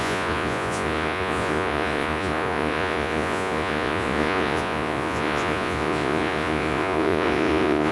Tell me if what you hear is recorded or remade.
remade